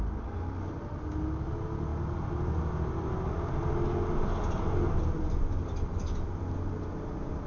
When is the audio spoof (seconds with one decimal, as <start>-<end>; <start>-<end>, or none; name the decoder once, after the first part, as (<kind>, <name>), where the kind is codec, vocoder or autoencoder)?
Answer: none